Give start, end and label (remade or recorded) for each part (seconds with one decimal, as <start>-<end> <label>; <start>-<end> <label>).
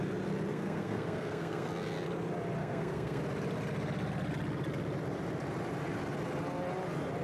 0.0-0.5 recorded; 0.5-1.7 remade; 1.7-2.6 recorded; 2.6-3.2 remade; 3.2-7.2 recorded